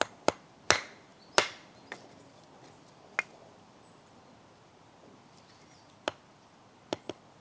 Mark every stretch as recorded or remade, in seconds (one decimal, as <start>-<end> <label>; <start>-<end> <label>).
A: 0.0-7.4 recorded